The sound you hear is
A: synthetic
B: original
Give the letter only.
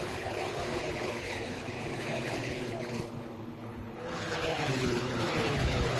A